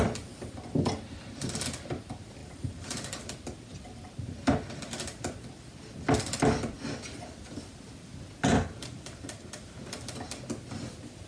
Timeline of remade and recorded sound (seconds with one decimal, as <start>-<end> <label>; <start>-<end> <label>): 0.0-2.4 recorded; 2.4-3.2 remade; 3.2-8.5 recorded; 8.5-9.6 remade; 9.6-11.3 recorded